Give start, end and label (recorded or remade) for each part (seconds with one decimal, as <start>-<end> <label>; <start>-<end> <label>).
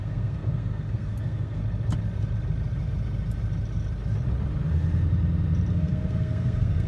0.0-1.6 remade; 1.6-5.7 recorded; 5.7-6.9 remade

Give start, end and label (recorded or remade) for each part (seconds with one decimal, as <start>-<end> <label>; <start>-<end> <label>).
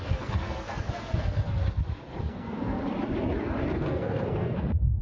0.0-1.6 remade; 1.6-2.2 recorded; 2.2-2.8 remade; 2.8-3.7 recorded; 3.7-5.0 remade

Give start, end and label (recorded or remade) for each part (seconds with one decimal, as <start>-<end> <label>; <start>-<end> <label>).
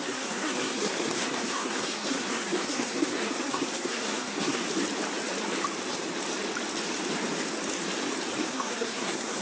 0.0-4.6 remade; 4.6-8.5 recorded; 8.5-9.4 remade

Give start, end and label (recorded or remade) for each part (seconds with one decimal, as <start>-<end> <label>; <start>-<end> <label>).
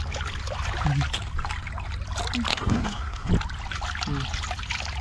0.0-2.5 recorded; 2.5-3.3 remade; 3.3-5.0 recorded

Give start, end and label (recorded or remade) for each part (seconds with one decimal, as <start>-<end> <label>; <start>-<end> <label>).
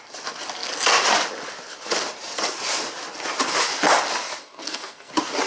0.0-4.4 recorded; 4.4-5.1 remade; 5.1-5.5 recorded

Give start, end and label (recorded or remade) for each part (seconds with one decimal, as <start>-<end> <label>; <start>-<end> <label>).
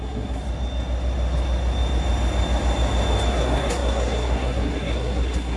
0.0-0.4 remade; 0.4-3.3 recorded; 3.3-5.6 remade